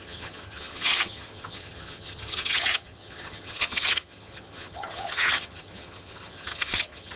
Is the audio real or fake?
fake